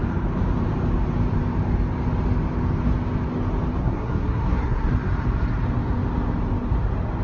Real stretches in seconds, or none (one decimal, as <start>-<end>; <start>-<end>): 0.0-3.8; 4.9-7.2